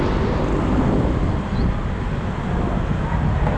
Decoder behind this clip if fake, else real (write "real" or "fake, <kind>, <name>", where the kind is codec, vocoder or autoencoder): real